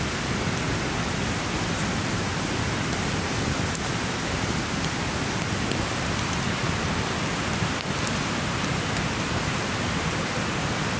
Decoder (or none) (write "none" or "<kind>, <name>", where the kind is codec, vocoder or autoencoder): none